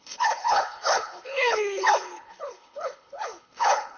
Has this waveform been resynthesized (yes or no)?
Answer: yes